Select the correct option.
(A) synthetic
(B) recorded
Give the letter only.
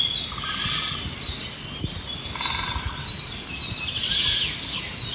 B